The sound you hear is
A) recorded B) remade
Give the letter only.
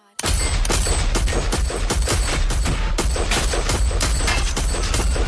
A